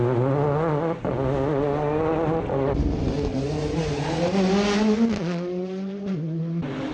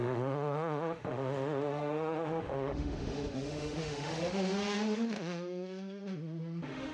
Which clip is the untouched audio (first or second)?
first